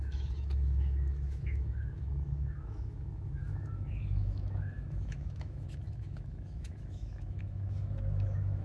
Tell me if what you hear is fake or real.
fake